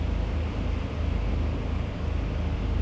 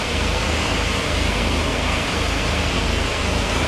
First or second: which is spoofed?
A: second